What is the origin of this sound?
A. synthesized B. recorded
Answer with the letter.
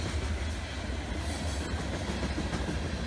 B